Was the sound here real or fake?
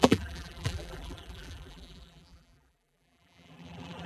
fake